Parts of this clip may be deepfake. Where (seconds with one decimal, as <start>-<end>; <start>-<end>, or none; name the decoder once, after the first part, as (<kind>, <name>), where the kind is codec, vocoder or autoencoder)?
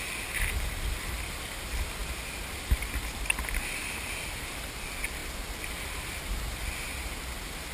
none